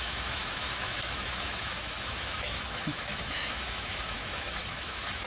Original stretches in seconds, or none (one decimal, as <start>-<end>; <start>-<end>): none

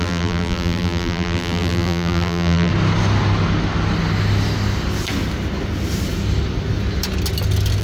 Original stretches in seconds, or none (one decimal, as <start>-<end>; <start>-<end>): 2.7-7.8

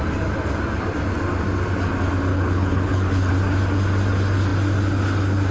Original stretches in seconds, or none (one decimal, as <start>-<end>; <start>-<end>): 0.0-2.3; 3.3-5.5

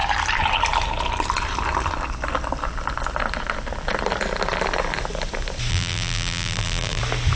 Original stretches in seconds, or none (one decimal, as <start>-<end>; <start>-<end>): 0.0-5.7; 7.0-7.4

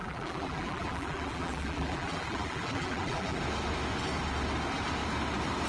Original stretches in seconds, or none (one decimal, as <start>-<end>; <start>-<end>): 3.4-5.7

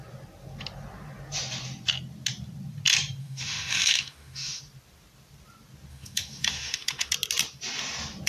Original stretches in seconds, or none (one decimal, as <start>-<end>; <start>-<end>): 0.0-3.2; 4.6-5.9; 7.1-8.3

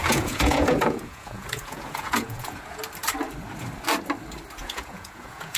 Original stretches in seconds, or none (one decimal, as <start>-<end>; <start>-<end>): 2.8-4.6

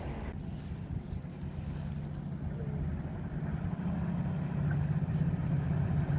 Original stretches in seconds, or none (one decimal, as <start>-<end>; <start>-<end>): 0.0-1.3; 1.9-6.2